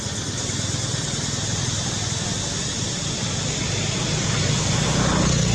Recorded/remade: recorded